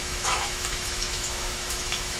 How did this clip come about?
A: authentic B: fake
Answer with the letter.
B